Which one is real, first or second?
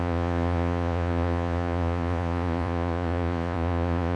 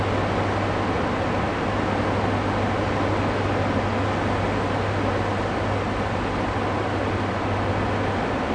second